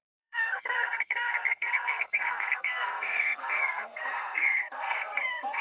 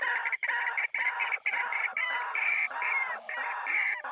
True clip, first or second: second